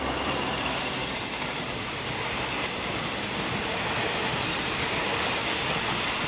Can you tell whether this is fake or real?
real